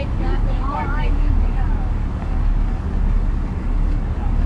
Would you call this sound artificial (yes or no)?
yes